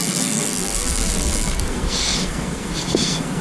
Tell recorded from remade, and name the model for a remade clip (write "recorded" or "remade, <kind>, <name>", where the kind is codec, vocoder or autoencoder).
remade, codec, SNAC